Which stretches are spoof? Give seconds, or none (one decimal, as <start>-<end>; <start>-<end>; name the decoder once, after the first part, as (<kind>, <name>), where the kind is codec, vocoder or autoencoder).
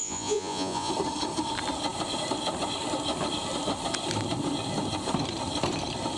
0.0-0.9 (vocoder, Vocos)